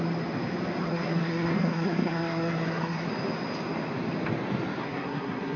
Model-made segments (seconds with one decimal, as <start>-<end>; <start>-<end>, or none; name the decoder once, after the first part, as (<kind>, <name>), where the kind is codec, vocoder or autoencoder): 0.8-3.1 (codec, SNAC); 4.8-5.6